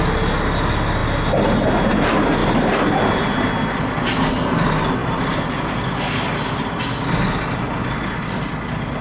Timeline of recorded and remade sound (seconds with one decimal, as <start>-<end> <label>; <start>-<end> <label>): 0.0-9.0 recorded